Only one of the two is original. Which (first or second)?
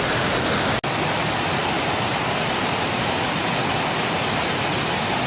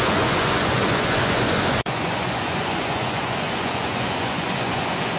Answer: first